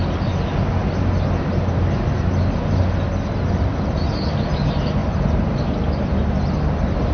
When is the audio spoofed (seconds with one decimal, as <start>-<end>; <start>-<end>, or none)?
5.0-5.8